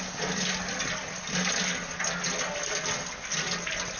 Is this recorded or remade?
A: recorded